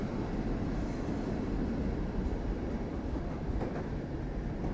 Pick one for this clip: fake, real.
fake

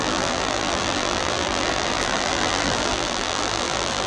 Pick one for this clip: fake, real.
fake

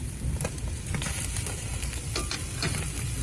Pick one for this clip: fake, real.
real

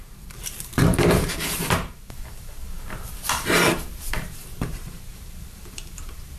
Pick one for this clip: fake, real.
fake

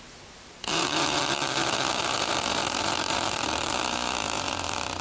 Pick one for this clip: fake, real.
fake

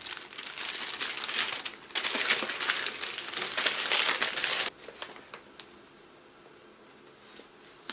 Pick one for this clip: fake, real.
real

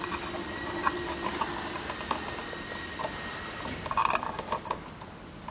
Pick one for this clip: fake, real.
fake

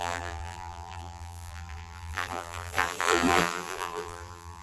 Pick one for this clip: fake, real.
fake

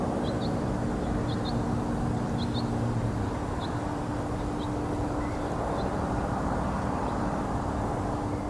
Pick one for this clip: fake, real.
real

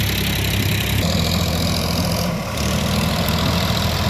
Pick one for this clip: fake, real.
fake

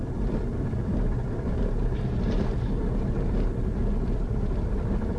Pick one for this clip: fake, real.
fake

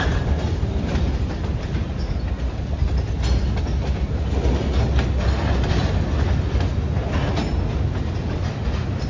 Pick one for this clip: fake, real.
real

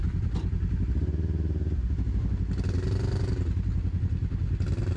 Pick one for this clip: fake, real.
real